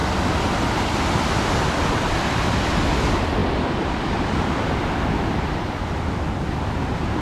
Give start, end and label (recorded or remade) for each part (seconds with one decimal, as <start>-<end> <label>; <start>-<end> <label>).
0.0-2.7 remade; 2.7-3.4 recorded; 3.4-4.9 remade; 4.9-7.2 recorded